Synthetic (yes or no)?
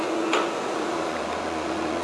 yes